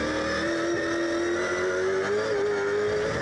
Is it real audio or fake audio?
real